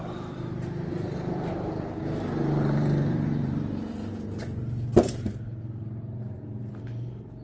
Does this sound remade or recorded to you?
remade